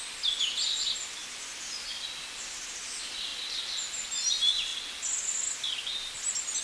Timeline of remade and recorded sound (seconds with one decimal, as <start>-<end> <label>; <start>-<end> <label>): 0.0-6.6 recorded